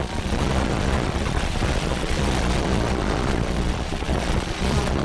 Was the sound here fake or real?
fake